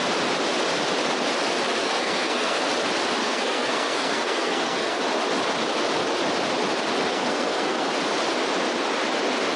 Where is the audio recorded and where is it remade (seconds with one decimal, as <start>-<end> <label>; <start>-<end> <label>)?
0.0-1.8 recorded; 1.8-2.6 remade; 2.6-3.2 recorded; 3.2-5.0 remade; 5.0-7.1 recorded; 7.1-7.9 remade; 7.9-9.6 recorded